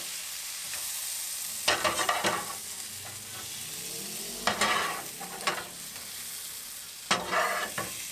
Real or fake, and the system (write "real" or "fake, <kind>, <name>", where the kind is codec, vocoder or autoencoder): real